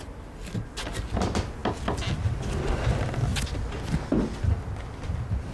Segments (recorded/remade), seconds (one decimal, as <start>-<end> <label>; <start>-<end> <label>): 0.0-5.5 recorded